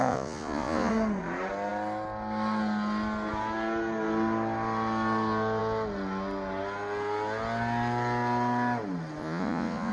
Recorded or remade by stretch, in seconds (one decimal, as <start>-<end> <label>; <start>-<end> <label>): 0.0-0.9 remade; 0.9-9.2 recorded; 9.2-9.9 remade